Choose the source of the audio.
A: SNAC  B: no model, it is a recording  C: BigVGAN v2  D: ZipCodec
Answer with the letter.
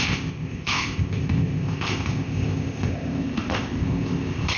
D